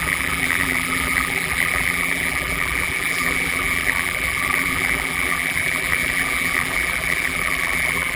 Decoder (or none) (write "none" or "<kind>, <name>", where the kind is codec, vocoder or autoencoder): vocoder, BigVGAN v2